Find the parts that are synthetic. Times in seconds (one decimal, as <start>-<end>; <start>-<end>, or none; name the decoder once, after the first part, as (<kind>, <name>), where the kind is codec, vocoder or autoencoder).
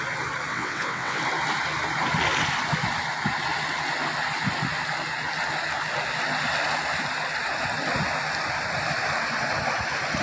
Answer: 0.5-1.2 (vocoder, WaveNeXt)